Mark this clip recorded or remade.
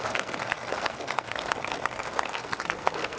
remade